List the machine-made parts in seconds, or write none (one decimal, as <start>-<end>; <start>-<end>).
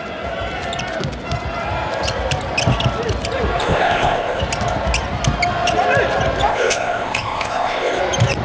3.6-4.4; 6.5-8.0